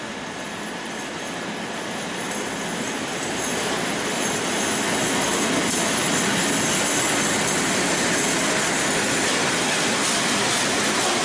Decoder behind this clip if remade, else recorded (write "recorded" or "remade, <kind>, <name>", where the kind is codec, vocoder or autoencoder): recorded